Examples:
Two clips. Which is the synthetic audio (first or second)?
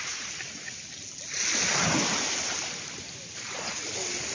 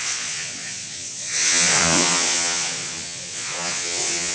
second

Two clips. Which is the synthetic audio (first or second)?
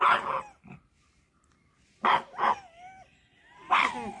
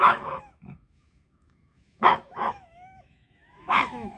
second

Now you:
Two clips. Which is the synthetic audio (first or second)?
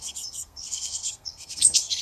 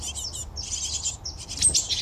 first